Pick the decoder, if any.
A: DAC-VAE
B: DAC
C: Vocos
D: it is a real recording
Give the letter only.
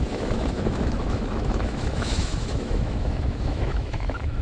A